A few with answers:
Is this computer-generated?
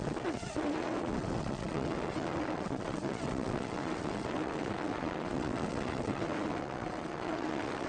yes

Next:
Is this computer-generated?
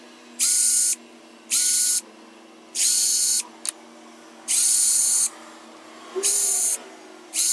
no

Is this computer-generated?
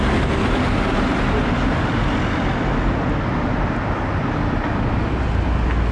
no